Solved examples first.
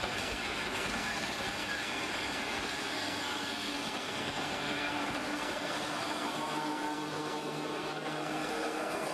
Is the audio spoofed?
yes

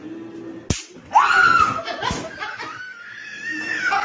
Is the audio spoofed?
no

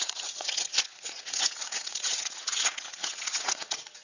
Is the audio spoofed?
yes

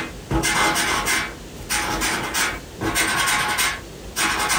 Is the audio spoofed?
no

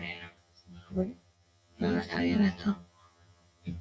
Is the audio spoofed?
yes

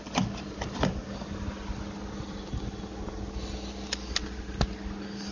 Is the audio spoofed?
no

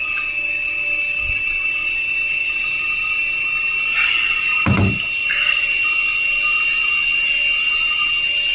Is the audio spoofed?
no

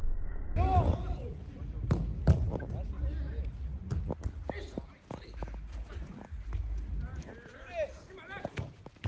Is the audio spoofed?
no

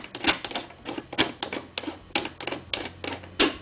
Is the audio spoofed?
no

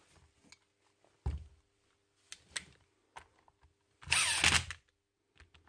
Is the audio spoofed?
no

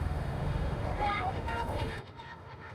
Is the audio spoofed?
yes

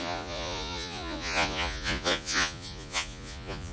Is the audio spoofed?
yes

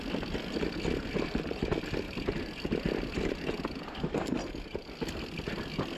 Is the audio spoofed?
no